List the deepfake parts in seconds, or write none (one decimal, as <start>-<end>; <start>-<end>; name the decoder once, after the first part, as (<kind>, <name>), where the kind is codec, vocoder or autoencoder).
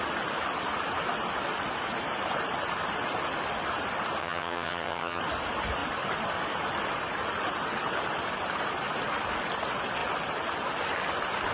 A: 4.2-5.2 (vocoder, HiFi-GAN)